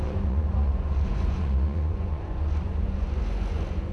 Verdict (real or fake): fake